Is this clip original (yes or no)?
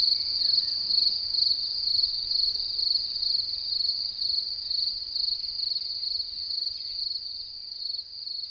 yes